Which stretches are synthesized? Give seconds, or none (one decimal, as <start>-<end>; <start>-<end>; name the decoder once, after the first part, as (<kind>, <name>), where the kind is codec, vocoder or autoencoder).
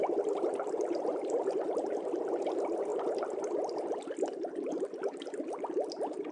1.1-1.9 (vocoder, BigVGAN v2); 2.9-3.9